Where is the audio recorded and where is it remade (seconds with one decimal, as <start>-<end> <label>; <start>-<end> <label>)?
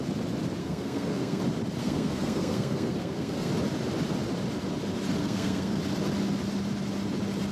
0.0-0.6 recorded; 0.6-1.4 remade; 1.4-1.8 recorded; 1.8-3.5 remade; 3.5-5.2 recorded; 5.2-5.8 remade; 5.8-7.5 recorded